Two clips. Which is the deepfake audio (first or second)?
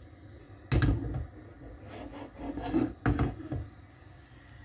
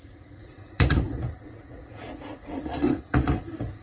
second